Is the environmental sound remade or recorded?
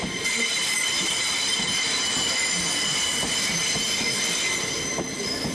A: recorded